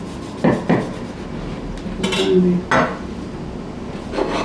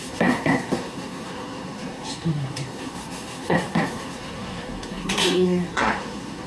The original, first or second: first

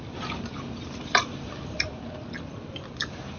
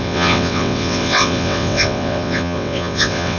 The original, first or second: first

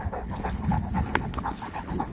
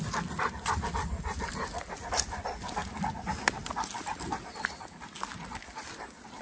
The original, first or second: second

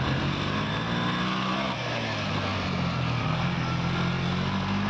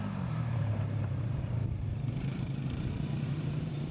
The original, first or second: first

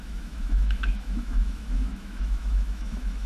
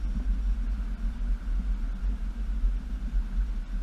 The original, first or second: second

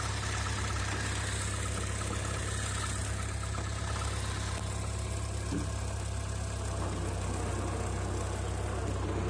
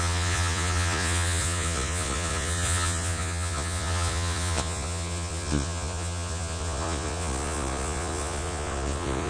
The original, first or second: first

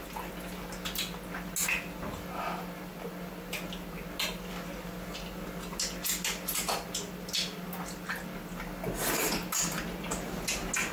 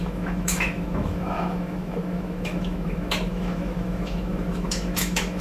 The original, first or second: first